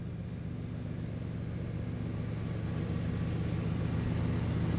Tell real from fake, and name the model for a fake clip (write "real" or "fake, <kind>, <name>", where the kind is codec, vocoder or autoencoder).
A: real